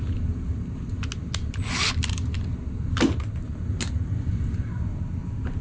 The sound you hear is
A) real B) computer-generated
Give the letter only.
A